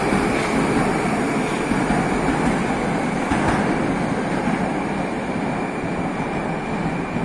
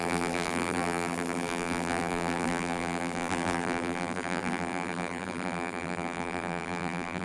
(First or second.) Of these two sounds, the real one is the first